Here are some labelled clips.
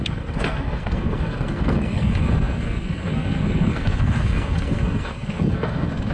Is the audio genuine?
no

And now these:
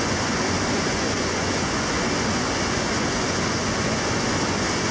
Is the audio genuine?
no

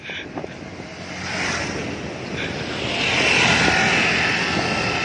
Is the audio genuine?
yes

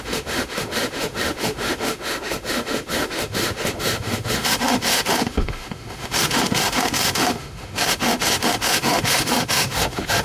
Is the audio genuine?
no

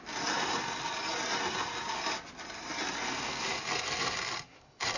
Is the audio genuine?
yes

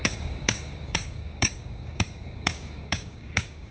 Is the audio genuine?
no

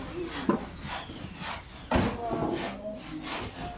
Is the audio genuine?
yes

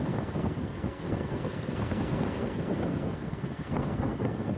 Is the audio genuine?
no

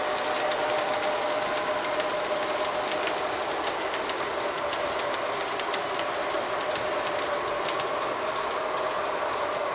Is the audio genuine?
yes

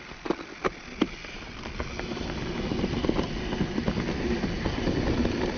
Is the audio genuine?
yes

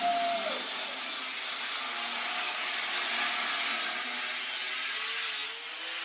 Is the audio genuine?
yes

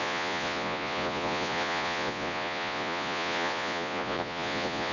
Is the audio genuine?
no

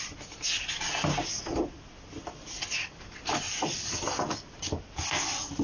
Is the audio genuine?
yes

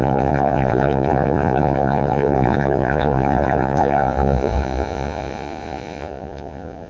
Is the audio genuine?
no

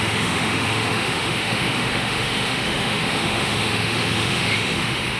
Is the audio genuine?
no